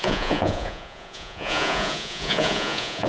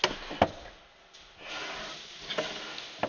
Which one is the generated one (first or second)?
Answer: first